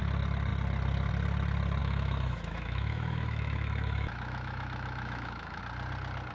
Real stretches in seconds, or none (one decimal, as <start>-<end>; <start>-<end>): 0.0-1.8; 5.6-6.3